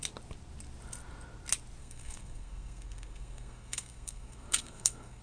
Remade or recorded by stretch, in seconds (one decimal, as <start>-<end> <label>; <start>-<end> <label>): 0.0-1.8 recorded; 1.8-5.2 remade